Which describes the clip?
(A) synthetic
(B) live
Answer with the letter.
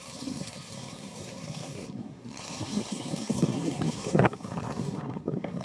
A